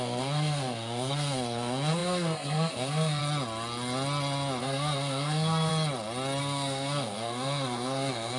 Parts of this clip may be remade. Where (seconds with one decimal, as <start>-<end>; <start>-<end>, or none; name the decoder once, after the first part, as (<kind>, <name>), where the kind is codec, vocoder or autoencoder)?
0.0-3.2 (codec, SNAC); 4.6-5.7; 6.4-8.4